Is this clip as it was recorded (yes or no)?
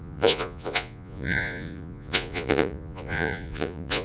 no